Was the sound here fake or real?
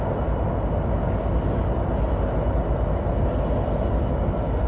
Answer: real